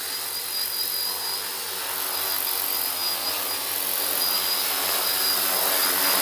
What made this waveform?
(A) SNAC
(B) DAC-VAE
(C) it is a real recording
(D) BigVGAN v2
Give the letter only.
C